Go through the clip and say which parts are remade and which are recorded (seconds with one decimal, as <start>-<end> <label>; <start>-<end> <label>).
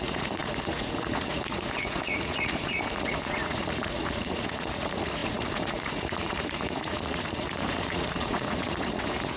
0.0-9.4 remade